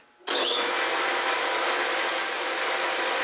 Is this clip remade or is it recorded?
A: recorded